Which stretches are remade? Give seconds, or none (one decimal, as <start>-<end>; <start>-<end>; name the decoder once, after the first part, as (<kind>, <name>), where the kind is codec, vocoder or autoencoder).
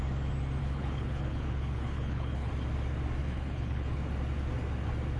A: 0.6-2.5 (codec, HILCodec); 3.2-4.0